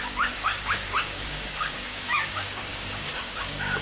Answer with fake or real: fake